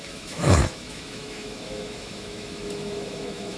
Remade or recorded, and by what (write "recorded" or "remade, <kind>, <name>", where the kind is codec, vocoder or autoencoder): remade, autoencoder, DAC-VAE